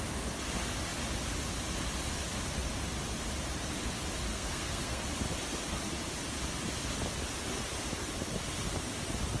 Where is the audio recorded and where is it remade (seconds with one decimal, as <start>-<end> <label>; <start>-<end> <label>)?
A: 0.0-4.3 recorded; 4.3-5.0 remade; 5.0-9.4 recorded